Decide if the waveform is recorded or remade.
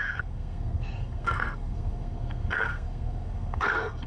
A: remade